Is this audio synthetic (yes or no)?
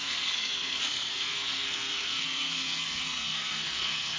yes